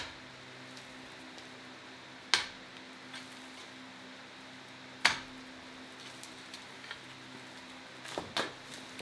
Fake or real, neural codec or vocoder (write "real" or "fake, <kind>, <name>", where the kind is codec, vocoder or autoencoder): real